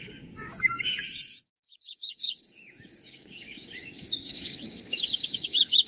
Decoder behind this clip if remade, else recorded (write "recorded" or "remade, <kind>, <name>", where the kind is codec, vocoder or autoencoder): remade, codec, DAC